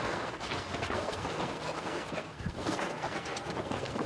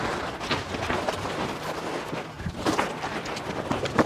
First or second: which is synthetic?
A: first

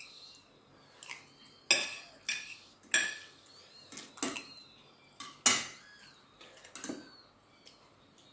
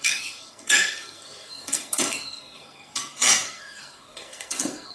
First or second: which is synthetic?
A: second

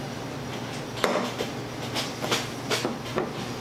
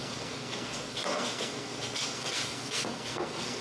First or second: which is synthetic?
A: second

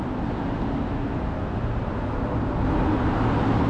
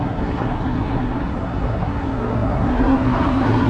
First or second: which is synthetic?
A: second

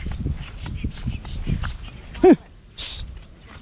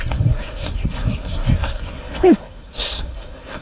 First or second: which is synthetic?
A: second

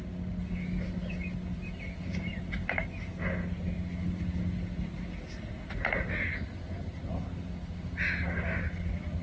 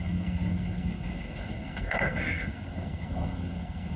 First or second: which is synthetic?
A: second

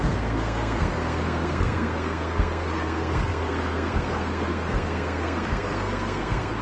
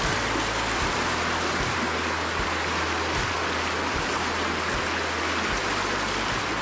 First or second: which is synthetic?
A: first